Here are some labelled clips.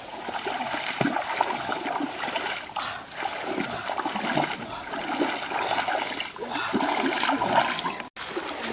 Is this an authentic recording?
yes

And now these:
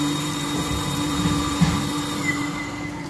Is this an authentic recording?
no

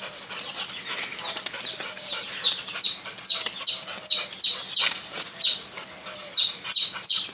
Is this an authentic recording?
yes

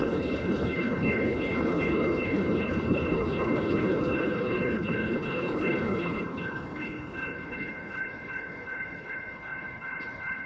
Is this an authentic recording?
no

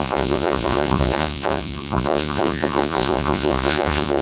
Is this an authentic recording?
no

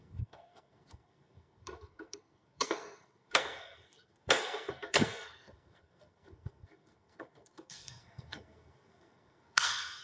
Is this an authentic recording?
no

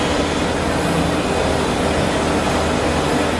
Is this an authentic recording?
yes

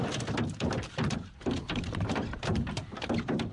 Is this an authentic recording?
no